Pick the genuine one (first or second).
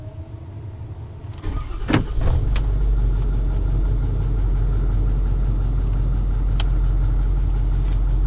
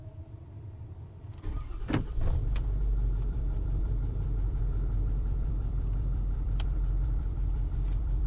first